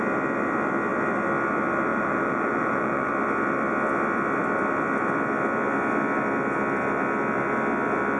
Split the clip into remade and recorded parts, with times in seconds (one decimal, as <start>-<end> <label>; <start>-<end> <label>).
0.0-1.9 recorded; 1.9-3.1 remade; 3.1-8.2 recorded